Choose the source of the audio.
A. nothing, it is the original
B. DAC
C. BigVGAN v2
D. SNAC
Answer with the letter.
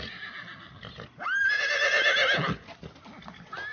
A